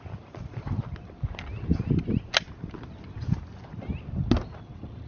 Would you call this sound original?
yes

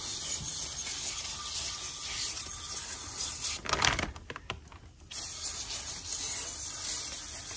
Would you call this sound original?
yes